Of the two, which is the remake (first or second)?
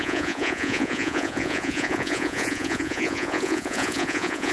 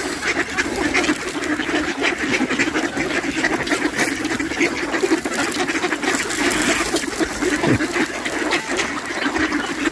first